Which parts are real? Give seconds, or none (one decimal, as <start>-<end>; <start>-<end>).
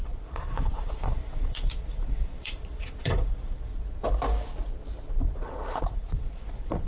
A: 3.7-5.2